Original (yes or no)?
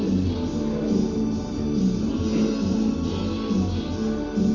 yes